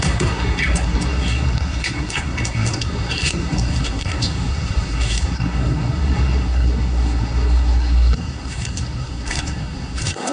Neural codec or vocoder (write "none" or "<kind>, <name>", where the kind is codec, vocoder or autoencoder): codec, SNAC